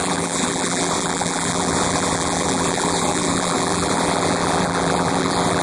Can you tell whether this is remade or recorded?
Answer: remade